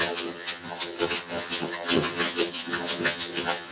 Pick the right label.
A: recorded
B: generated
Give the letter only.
B